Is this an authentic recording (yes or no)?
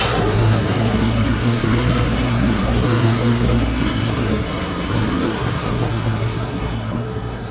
no